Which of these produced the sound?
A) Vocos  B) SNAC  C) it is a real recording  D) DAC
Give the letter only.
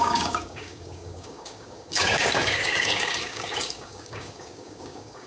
D